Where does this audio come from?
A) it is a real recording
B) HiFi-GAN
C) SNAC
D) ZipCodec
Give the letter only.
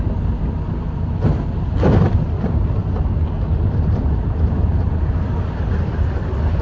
A